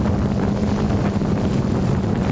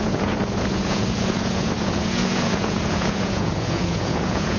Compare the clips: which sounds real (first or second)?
first